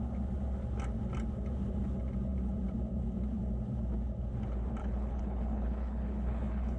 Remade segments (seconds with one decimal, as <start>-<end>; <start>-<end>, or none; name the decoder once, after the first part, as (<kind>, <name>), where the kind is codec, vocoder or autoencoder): 4.8-6.8 (codec, HILCodec)